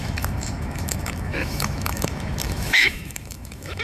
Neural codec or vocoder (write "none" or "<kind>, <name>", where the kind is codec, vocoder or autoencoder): autoencoder, DAC-VAE